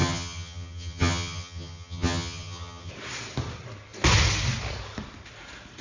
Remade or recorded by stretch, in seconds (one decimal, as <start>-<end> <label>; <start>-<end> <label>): 0.0-2.9 remade; 2.9-5.8 recorded